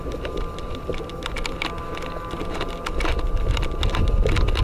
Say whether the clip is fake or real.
real